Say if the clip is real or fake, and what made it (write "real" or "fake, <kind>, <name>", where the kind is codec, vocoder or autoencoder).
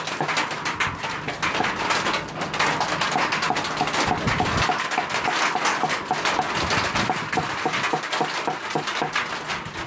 real